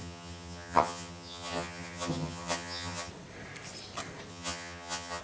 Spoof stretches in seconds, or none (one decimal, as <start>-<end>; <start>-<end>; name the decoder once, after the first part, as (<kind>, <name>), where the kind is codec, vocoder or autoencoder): 0.0-3.1 (vocoder, HiFi-GAN); 4.3-5.2